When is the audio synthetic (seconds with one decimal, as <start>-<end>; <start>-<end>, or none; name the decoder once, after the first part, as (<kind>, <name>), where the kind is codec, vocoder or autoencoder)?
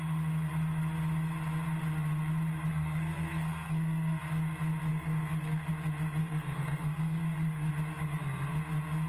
2.7-4.2 (codec, SNAC); 4.9-5.7; 6.2-7.7